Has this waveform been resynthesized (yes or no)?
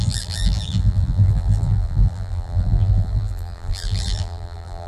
yes